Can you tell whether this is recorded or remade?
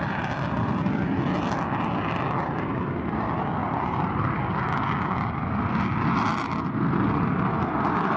recorded